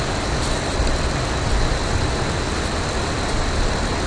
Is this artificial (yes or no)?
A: no